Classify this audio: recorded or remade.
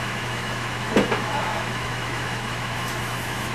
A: remade